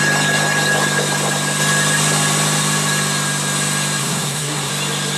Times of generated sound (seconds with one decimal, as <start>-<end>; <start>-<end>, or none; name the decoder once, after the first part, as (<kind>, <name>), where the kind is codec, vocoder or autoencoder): 4.0-4.7 (codec, SNAC)

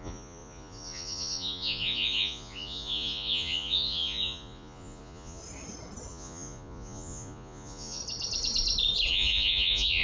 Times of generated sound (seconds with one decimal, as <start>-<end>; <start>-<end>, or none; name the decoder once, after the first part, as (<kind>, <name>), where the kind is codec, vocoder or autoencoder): 0.0-5.4 (vocoder, Vocos); 6.1-8.0; 9.1-10.0

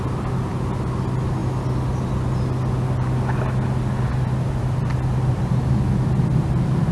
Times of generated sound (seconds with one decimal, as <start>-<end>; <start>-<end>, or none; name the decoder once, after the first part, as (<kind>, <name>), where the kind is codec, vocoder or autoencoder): none

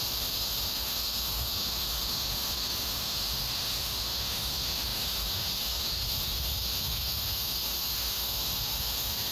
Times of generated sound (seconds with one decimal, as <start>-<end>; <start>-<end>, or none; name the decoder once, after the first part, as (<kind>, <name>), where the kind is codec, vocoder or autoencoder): 0.0-9.3 (autoencoder, DAC-VAE)